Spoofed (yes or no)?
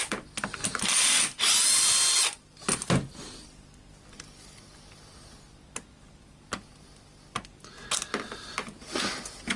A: no